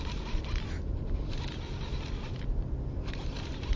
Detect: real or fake real